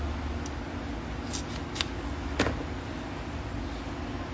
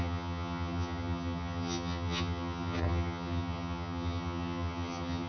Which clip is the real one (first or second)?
first